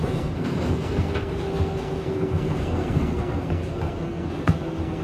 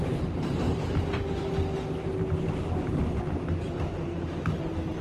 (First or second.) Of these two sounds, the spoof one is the first